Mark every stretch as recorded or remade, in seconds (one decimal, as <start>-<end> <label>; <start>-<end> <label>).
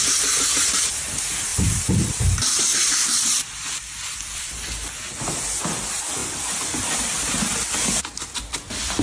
0.0-1.5 recorded; 1.5-4.9 remade; 4.9-6.2 recorded; 6.2-8.0 remade; 8.0-9.0 recorded